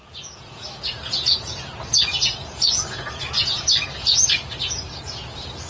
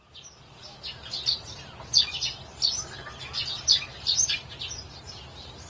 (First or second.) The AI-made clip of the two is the first